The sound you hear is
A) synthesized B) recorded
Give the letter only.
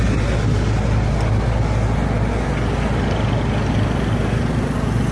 B